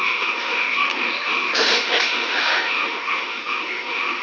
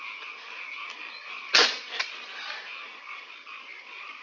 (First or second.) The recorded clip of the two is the second